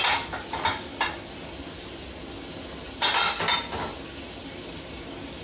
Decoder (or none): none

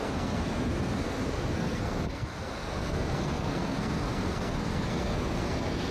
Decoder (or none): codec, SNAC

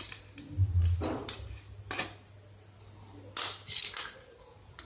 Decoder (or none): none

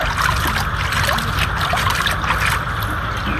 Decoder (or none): none